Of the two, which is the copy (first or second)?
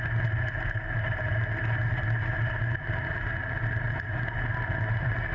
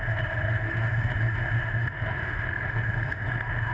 second